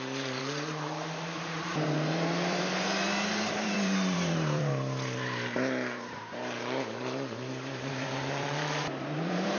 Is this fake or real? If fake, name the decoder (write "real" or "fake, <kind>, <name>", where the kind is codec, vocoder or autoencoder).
fake, vocoder, BigVGAN v2